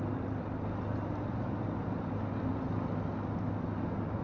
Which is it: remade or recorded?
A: recorded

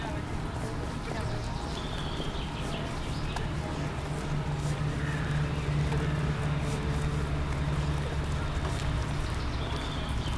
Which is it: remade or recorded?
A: recorded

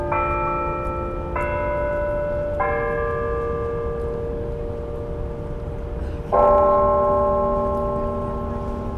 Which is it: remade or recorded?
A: recorded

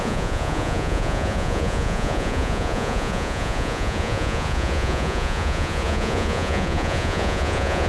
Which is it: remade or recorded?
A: remade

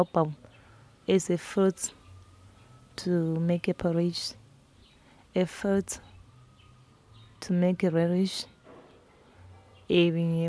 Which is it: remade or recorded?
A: recorded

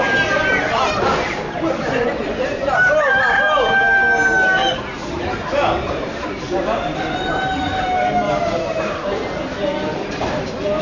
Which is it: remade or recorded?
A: recorded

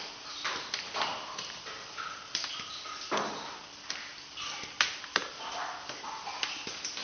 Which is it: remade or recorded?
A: recorded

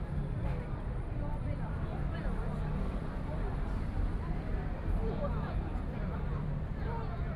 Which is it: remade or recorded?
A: remade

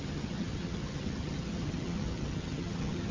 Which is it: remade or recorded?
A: remade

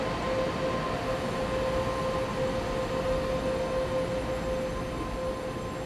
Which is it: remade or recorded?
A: recorded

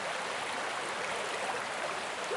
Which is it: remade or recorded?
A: recorded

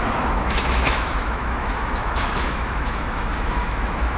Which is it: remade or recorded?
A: remade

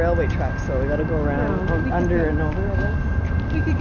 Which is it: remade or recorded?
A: recorded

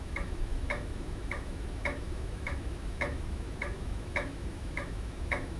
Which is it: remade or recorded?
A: remade